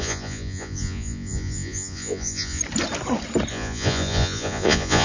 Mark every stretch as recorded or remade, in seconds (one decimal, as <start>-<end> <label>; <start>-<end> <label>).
0.0-2.6 remade; 2.6-3.5 recorded; 3.5-5.0 remade